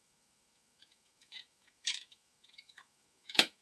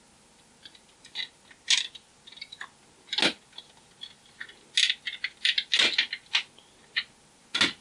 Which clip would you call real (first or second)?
second